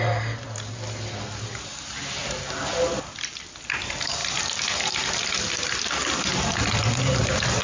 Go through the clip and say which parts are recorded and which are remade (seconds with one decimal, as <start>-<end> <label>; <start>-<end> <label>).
0.0-7.6 recorded